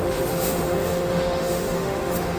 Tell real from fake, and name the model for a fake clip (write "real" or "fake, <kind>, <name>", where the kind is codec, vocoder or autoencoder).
fake, autoencoder, DAC-VAE